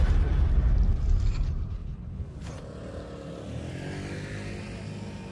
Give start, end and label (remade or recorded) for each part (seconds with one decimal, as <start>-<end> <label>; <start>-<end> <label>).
0.0-1.8 recorded; 1.8-2.5 remade; 2.5-5.3 recorded

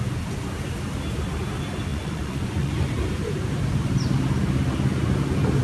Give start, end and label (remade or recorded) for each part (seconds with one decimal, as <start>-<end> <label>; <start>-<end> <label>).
0.0-1.9 recorded; 1.9-2.7 remade; 2.7-5.6 recorded

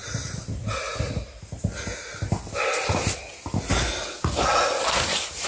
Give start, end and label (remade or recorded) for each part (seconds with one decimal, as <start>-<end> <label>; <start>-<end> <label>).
0.0-5.5 recorded

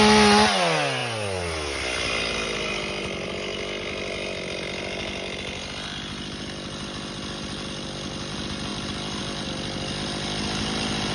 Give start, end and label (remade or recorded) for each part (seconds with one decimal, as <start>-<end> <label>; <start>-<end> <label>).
0.0-11.1 recorded

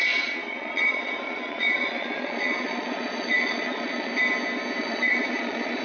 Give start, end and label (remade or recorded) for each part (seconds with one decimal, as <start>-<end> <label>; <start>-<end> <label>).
0.0-4.1 remade; 4.1-4.8 recorded; 4.8-5.8 remade

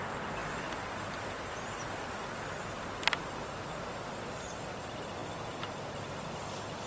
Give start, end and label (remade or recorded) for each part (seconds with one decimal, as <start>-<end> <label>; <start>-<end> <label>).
0.0-6.9 recorded

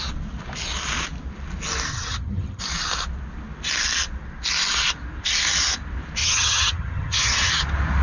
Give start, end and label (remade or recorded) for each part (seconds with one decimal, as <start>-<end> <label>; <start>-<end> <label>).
0.0-1.9 recorded; 1.9-2.6 remade; 2.6-6.2 recorded; 6.2-7.5 remade; 7.5-8.0 recorded